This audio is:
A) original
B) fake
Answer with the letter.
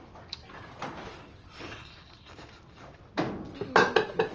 A